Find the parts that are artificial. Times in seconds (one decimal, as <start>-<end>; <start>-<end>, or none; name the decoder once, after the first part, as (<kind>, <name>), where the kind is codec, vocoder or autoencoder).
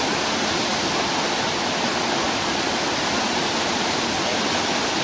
none